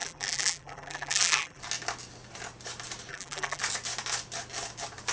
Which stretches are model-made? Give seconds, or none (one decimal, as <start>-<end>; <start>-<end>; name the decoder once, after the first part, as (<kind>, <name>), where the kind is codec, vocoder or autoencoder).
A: 0.0-1.6 (vocoder, BigVGAN v2); 3.1-3.6